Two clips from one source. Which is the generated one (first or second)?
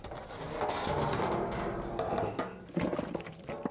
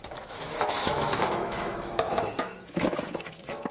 second